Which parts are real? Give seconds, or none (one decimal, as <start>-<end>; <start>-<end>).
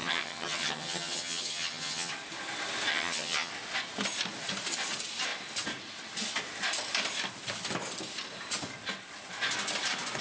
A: 2.1-2.9; 3.5-10.2